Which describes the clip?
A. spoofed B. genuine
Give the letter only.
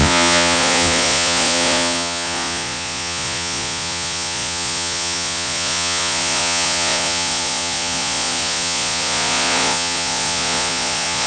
A